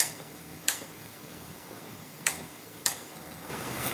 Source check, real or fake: fake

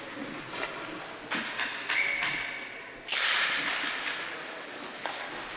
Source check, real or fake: real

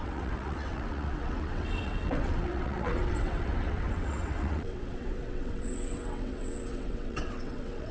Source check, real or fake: fake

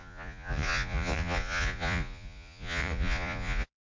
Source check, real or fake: fake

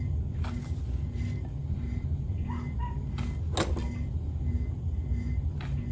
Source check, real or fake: real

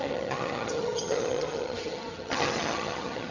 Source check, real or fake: fake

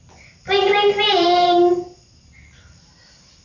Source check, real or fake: fake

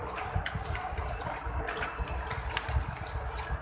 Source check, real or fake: real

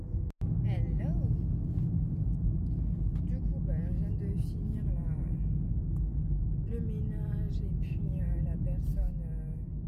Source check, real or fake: real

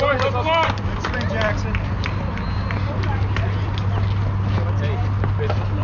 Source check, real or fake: real